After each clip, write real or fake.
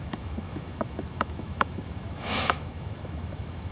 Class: fake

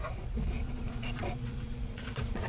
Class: fake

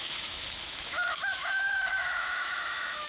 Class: fake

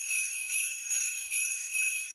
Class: fake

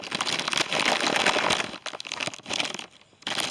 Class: real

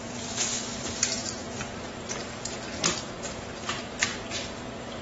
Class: fake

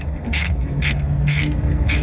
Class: fake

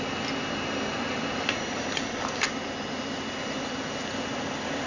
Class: real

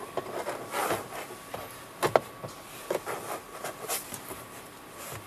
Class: real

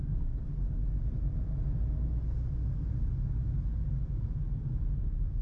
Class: real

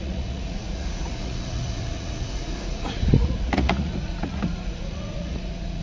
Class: fake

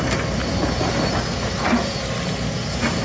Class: real